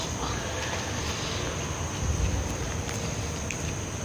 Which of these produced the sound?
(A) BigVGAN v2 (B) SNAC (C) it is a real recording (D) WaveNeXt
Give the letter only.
C